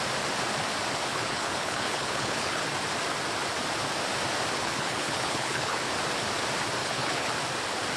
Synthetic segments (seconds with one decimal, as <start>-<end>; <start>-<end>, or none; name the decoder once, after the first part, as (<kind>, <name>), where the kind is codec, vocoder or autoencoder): 1.1-2.6 (codec, HILCodec); 4.6-5.9; 6.8-7.3